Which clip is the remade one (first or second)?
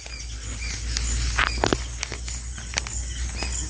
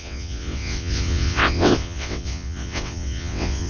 second